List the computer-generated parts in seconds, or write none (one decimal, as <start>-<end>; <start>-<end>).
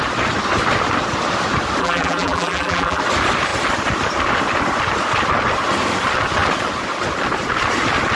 1.8-3.0